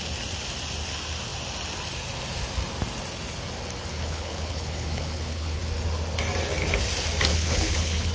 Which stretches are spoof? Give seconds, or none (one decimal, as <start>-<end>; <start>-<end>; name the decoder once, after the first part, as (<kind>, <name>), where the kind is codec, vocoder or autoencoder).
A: 3.9-5.6 (codec, HILCodec); 7.3-8.1